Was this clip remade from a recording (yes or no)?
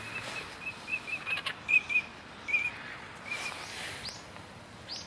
no